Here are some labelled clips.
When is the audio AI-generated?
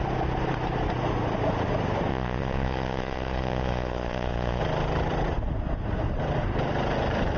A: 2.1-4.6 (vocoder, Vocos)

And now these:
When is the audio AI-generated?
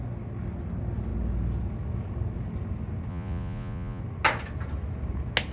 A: 3.1-4.0 (vocoder, Vocos)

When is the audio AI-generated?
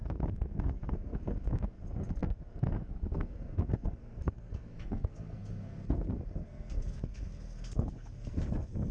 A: 0.0-8.9 (codec, SNAC)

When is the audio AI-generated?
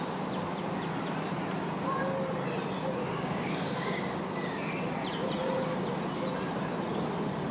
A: 3.0-4.2 (codec, DAC)